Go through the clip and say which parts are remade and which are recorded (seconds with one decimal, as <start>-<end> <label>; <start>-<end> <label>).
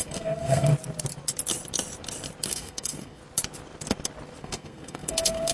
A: 0.0-0.7 remade; 0.7-2.5 recorded; 2.5-3.2 remade; 3.2-4.4 recorded; 4.4-5.5 remade